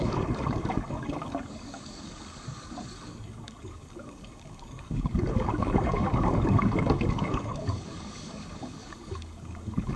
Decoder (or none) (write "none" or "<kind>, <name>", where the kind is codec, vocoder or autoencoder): codec, DAC